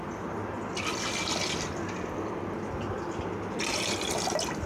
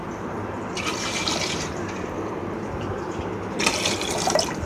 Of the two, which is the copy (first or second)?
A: second